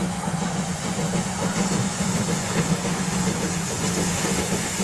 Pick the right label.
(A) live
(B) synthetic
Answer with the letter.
B